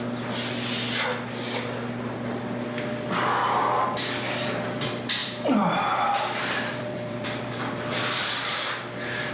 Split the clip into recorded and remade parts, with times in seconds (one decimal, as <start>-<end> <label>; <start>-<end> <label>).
0.0-5.2 recorded; 5.2-8.6 remade; 8.6-9.3 recorded